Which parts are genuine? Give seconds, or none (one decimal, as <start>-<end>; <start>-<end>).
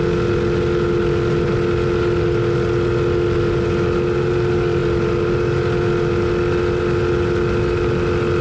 0.0-8.4